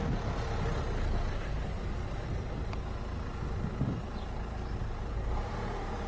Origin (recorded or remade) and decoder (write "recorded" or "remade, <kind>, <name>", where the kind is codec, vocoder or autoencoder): recorded